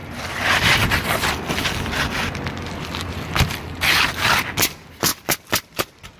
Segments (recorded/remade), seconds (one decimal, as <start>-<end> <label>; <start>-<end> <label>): 0.0-6.2 recorded